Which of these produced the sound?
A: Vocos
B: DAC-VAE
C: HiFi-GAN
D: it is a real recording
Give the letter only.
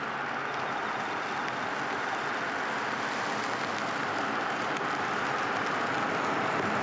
D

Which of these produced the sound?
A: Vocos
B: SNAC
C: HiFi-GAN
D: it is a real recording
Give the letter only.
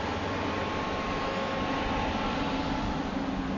D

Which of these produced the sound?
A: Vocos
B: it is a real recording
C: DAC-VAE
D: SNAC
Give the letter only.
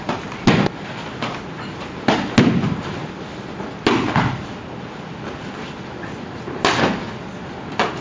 B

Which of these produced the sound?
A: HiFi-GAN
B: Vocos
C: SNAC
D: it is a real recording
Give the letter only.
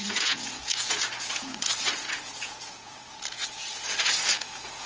B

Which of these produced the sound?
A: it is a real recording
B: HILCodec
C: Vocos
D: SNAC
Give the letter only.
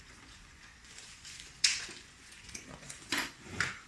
C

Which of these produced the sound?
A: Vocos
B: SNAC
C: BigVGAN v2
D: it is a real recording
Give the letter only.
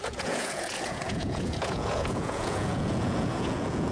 A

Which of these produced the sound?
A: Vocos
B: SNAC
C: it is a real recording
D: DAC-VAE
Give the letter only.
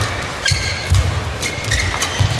C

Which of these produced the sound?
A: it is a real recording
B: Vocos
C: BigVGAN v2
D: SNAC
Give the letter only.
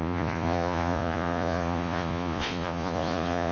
B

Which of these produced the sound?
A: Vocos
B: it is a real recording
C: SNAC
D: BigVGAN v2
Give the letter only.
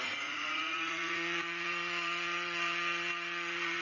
A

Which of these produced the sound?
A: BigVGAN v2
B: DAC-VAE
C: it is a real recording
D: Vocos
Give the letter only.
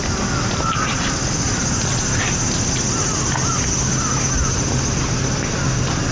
C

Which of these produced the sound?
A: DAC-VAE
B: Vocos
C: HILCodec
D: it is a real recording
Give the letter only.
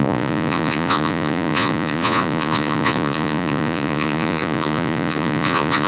B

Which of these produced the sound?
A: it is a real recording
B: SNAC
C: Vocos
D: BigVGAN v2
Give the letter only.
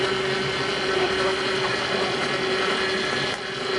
A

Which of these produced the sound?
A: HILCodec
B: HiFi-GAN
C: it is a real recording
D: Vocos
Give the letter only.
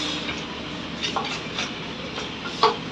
C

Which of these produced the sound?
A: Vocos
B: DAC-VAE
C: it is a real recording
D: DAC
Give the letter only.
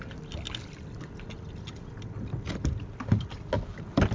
C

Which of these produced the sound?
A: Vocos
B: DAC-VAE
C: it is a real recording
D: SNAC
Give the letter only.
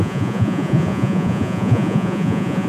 A